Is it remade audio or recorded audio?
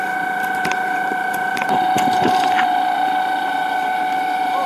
remade